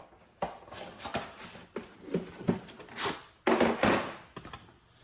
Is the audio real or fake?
real